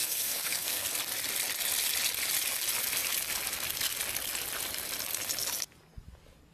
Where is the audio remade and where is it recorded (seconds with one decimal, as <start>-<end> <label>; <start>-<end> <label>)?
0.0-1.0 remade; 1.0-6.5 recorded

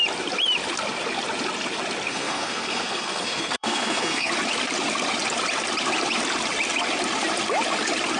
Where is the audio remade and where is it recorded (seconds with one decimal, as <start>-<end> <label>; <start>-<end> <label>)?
0.0-2.1 recorded; 2.1-4.3 remade; 4.3-8.2 recorded

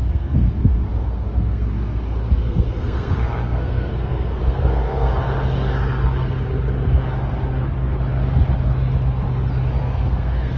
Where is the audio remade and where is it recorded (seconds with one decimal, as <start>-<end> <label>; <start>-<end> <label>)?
0.0-5.1 remade; 5.1-9.8 recorded; 9.8-10.6 remade

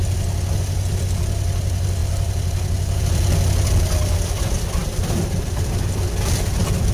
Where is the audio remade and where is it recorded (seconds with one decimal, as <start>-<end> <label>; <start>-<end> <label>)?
0.0-6.9 recorded

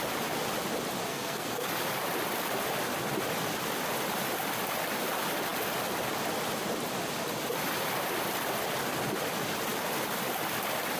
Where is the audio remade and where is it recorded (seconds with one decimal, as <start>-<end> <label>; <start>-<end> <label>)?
0.0-1.1 recorded; 1.1-1.7 remade; 1.7-11.0 recorded

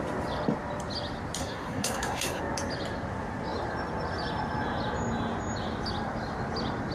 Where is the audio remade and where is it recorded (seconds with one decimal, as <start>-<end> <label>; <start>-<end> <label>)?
0.0-1.4 recorded; 1.4-2.4 remade; 2.4-6.9 recorded

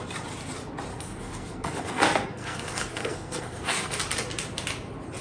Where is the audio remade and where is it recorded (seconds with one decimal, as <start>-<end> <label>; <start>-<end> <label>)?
0.0-0.9 recorded; 0.9-4.0 remade; 4.0-5.2 recorded

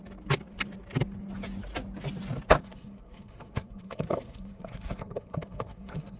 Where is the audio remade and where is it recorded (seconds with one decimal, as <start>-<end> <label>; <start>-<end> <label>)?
0.0-2.6 recorded; 2.6-6.2 remade